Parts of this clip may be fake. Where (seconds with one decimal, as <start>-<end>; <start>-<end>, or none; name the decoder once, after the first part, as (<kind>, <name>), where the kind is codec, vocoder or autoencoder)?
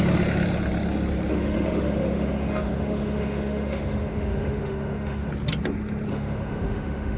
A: 1.3-5.3 (autoencoder, DAC-VAE); 6.1-7.2